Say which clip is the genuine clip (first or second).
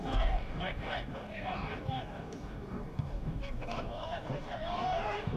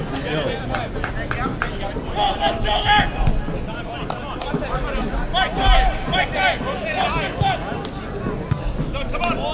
second